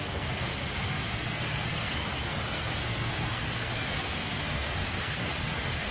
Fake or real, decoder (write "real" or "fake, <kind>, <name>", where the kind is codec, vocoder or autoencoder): fake, codec, SNAC